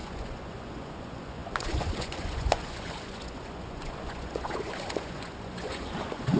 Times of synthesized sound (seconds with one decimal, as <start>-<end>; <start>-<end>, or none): 0.0-6.4